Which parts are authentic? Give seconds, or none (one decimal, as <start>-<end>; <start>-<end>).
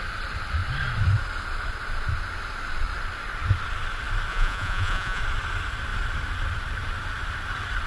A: 0.0-4.3; 5.2-7.9